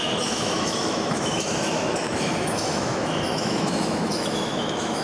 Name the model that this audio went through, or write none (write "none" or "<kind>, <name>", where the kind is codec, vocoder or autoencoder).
autoencoder, DAC-VAE